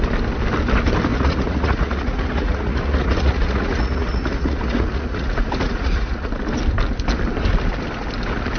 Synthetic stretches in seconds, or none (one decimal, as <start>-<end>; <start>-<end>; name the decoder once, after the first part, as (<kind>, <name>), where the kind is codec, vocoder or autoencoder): 1.1-6.3 (vocoder, Vocos)